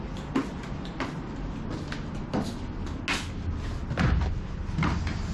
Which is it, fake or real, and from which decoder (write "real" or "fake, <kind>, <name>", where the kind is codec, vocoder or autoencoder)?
real